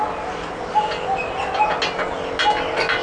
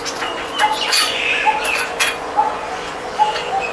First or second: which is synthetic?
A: second